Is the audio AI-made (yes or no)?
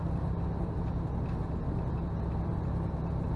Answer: no